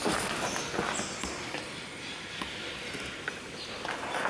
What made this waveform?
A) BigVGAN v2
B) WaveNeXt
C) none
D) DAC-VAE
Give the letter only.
C